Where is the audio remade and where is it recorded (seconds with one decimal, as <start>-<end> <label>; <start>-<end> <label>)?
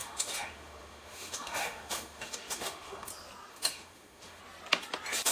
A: 0.0-3.1 remade; 3.1-3.5 recorded; 3.5-4.4 remade; 4.4-5.3 recorded